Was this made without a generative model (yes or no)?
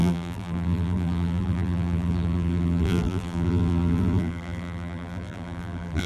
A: no